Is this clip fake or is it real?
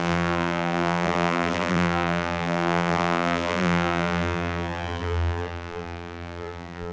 fake